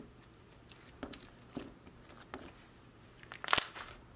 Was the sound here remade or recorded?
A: recorded